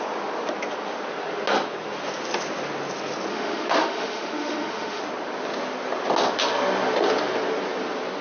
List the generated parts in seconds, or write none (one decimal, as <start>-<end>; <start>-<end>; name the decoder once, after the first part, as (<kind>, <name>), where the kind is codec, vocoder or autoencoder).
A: 3.3-5.0 (autoencoder, DAC-VAE)